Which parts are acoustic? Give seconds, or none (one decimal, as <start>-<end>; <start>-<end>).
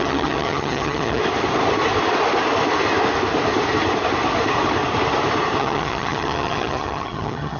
1.2-5.6